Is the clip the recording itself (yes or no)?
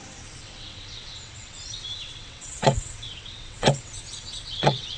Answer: no